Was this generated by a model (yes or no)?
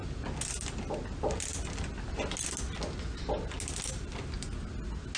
no